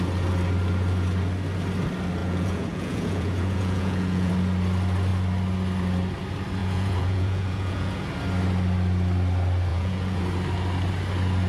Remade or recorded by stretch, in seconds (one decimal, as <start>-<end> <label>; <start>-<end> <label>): 0.0-2.2 recorded; 2.2-4.3 remade; 4.3-6.6 recorded; 6.6-8.1 remade; 8.1-9.7 recorded; 9.7-10.2 remade; 10.2-11.5 recorded